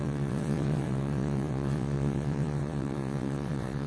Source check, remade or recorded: remade